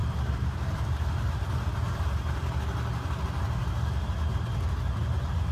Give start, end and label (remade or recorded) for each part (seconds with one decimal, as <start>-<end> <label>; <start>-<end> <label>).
0.0-3.2 remade; 3.2-5.5 recorded